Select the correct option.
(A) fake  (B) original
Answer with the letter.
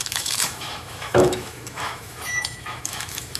A